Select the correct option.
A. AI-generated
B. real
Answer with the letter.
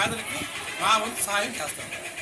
B